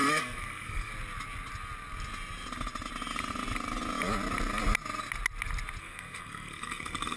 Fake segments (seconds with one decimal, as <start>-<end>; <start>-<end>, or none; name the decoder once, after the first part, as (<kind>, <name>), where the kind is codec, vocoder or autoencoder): 0.0-0.9 (codec, SNAC); 5.8-7.2

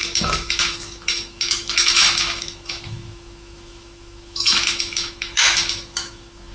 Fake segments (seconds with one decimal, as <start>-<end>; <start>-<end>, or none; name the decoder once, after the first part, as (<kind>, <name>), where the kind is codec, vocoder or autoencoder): 0.0-6.5 (autoencoder, DAC-VAE)

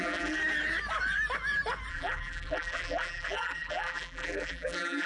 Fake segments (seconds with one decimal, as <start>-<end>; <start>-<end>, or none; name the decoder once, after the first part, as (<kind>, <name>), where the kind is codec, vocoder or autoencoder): 0.0-0.4 (vocoder, BigVGAN v2); 1.9-5.1

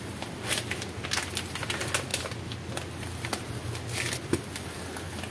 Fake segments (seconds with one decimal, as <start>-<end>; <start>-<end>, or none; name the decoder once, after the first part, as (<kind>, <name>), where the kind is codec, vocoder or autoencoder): none

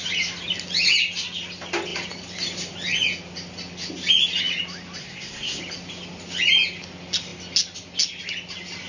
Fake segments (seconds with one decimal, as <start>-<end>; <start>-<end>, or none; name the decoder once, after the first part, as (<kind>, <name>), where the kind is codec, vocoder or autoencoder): 5.0-5.6 (codec, SNAC)